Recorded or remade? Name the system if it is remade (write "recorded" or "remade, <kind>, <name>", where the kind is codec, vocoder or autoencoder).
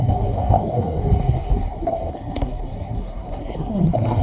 remade, codec, SNAC